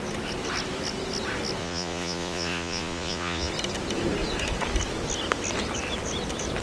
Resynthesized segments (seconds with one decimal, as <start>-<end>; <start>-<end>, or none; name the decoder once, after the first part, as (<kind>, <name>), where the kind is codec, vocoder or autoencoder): 1.6-3.5 (vocoder, Vocos)